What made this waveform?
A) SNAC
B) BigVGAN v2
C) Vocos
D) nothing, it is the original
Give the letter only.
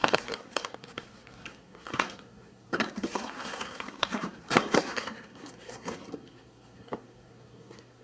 A